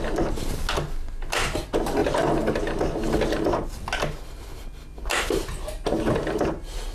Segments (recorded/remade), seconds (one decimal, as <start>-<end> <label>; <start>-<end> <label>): 0.0-6.9 recorded

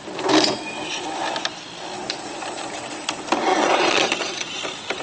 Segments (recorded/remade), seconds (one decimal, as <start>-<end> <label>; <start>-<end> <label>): 0.0-3.5 recorded; 3.5-4.6 remade; 4.6-5.0 recorded

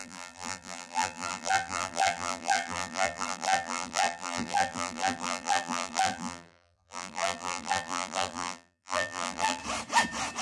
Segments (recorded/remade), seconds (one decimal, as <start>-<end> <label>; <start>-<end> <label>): 0.0-9.6 remade; 9.6-10.4 recorded

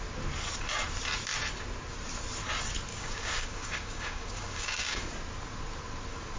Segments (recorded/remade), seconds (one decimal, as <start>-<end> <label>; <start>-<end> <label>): 0.0-2.9 recorded; 2.9-5.1 remade; 5.1-6.4 recorded

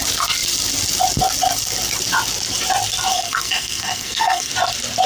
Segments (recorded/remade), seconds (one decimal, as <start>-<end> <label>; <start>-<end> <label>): 0.0-3.1 recorded; 3.1-4.5 remade; 4.5-5.1 recorded

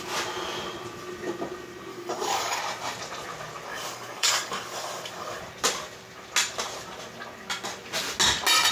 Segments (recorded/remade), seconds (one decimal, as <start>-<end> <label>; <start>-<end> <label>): 0.0-1.9 recorded; 1.9-2.6 remade; 2.6-3.7 recorded; 3.7-5.4 remade; 5.4-8.7 recorded

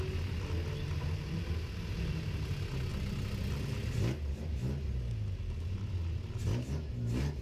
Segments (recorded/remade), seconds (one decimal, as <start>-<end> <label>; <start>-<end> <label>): 0.0-7.4 recorded

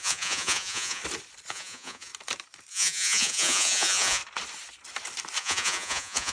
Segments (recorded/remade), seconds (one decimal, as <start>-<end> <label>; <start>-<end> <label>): 0.0-1.0 remade; 1.0-1.5 recorded; 1.5-2.1 remade; 2.1-2.7 recorded; 2.7-4.2 remade; 4.2-5.4 recorded; 5.4-6.3 remade